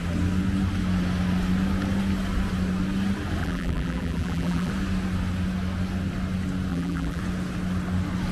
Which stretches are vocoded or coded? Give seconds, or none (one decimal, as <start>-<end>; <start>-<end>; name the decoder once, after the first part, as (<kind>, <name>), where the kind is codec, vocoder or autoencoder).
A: 3.4-4.7 (vocoder, BigVGAN v2); 6.7-7.2